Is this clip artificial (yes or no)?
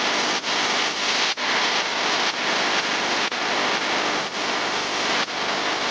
no